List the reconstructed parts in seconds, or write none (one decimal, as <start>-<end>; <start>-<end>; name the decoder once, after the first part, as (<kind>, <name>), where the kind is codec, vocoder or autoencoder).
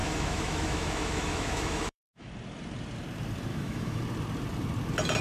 0.0-2.3 (autoencoder, DAC-VAE); 3.5-4.0